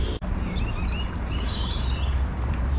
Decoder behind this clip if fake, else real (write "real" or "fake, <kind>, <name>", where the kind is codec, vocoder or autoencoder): fake, vocoder, BigVGAN v2